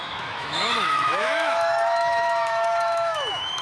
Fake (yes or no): yes